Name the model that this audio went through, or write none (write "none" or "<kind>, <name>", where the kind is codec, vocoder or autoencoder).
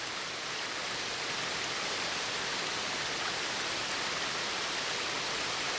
none